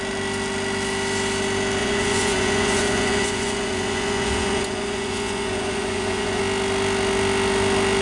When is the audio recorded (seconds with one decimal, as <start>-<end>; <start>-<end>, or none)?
0.0-1.8; 6.4-8.0

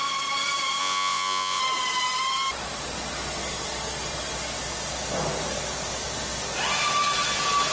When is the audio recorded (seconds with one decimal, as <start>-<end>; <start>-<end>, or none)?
0.0-0.8; 1.6-7.7

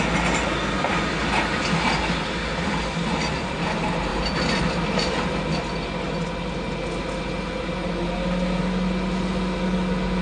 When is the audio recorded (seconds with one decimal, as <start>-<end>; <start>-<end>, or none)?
0.0-10.2

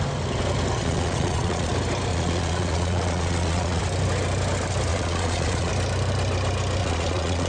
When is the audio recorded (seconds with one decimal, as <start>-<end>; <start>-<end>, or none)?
0.0-0.8; 1.7-2.1; 3.8-4.9; 5.7-6.8

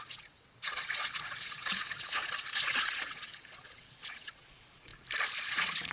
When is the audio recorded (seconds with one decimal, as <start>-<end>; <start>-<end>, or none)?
4.9-5.4